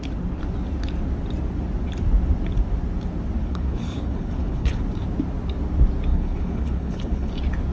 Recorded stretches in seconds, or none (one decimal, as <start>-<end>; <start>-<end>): 0.0-3.4; 4.8-6.1; 7.3-7.7